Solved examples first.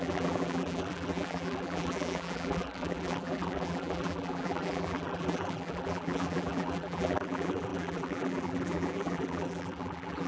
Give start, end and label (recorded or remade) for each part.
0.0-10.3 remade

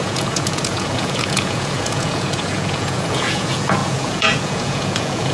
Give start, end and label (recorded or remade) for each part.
0.0-5.3 remade

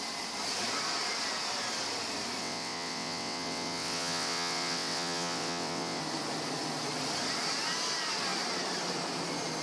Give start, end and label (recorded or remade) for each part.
0.0-2.4 recorded; 2.4-6.0 remade; 6.0-9.6 recorded

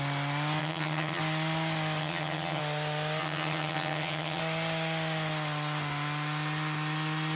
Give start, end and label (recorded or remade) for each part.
0.0-0.6 recorded; 0.6-1.2 remade; 1.2-2.0 recorded; 2.0-2.6 remade; 2.6-3.2 recorded; 3.2-4.4 remade; 4.4-7.4 recorded

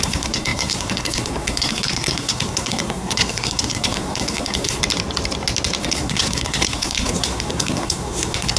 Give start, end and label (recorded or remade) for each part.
0.0-4.8 remade; 4.8-5.8 recorded; 5.8-8.6 remade

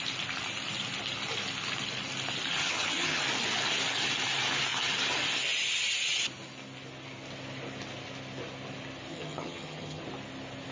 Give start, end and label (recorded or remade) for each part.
0.0-2.6 recorded; 2.6-3.2 remade; 3.2-9.1 recorded; 9.1-10.0 remade; 10.0-10.7 recorded

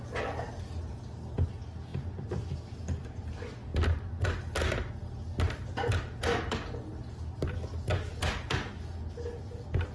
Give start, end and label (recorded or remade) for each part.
0.0-9.9 recorded